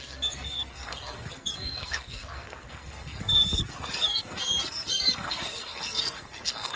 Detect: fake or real fake